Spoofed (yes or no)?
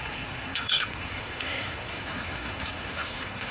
yes